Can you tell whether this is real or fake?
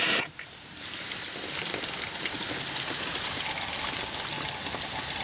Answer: real